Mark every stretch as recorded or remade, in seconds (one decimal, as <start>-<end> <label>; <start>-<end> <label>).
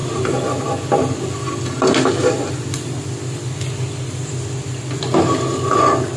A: 0.0-5.5 recorded; 5.5-6.2 remade